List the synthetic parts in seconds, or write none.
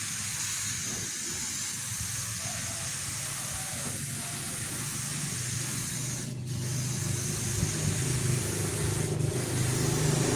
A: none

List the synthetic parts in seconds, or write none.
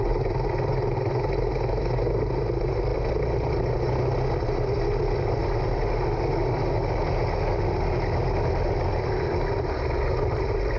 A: 5.4-6.0 (vocoder, BigVGAN v2)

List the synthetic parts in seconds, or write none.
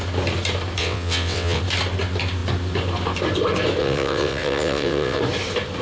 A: 0.8-1.6 (vocoder, WaveNeXt); 3.8-5.2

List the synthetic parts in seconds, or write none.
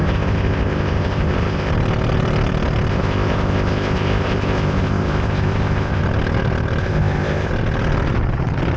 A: 0.0-1.7 (codec, ZipCodec); 2.9-6.0; 6.8-7.5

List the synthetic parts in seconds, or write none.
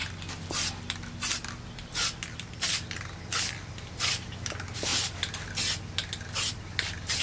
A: none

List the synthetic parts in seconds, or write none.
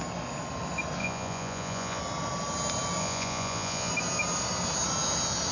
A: 1.0-2.0 (vocoder, Vocos); 3.0-3.9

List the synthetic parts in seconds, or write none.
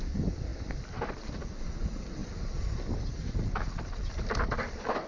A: none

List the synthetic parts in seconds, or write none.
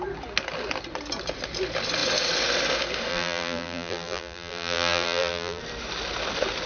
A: 3.1-5.6 (vocoder, BigVGAN v2)